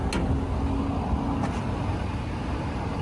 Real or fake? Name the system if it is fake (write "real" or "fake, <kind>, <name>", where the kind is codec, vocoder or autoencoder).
real